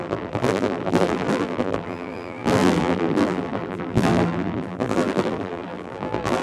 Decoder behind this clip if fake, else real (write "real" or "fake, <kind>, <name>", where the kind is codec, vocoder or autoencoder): fake, vocoder, BigVGAN v2